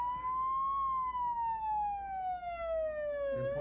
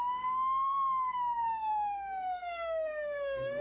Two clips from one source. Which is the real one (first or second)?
first